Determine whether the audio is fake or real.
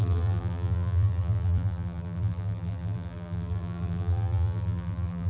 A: fake